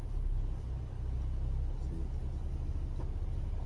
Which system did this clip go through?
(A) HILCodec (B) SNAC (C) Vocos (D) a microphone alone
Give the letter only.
D